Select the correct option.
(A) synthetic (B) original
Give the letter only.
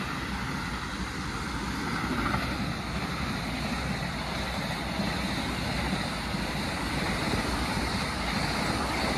B